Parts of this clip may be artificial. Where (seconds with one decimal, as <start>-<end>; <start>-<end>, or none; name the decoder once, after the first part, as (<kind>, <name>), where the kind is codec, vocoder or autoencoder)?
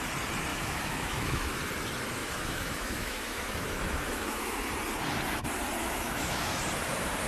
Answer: 0.5-1.6 (autoencoder, DAC-VAE); 2.2-4.7; 5.8-6.6